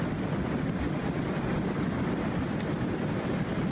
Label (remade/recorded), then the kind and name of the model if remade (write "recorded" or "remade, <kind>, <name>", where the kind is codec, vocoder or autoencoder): remade, vocoder, BigVGAN v2